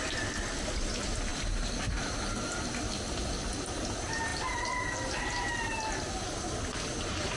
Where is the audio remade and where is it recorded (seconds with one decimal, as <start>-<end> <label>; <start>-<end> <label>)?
0.0-7.4 recorded